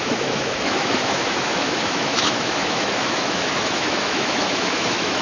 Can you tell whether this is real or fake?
fake